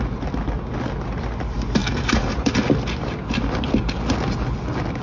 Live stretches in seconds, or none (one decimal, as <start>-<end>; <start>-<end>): 0.0-1.8; 2.5-5.0